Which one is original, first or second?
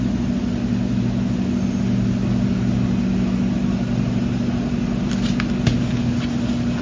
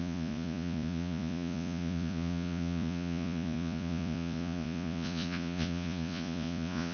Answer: first